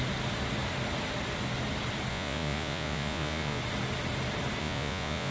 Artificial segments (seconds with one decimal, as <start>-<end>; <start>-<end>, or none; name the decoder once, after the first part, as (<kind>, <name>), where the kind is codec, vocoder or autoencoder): 2.1-3.6 (vocoder, Vocos); 4.6-5.3

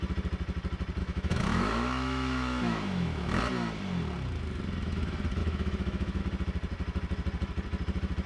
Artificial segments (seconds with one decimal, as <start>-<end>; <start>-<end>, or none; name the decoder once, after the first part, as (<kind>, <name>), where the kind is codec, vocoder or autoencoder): 1.0-3.4 (autoencoder, DAC-VAE); 5.4-6.2

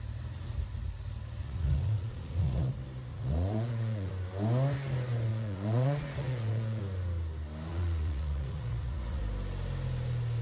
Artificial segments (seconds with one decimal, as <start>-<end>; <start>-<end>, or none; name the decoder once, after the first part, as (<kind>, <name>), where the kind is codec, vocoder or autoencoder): 1.4-2.7 (vocoder, Vocos); 3.1-4.1; 5.3-6.8; 7.7-9.2

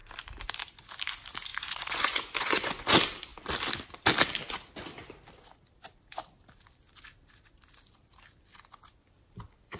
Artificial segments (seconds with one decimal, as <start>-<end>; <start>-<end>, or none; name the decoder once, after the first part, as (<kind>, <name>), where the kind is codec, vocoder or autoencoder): 1.5-2.9 (vocoder, Vocos)

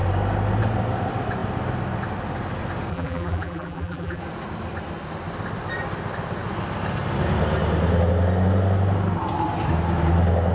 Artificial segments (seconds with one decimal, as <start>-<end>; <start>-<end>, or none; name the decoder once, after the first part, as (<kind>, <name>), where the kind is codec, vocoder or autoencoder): 2.9-4.2 (vocoder, BigVGAN v2)